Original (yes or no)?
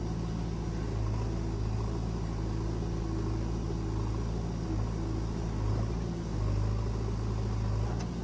yes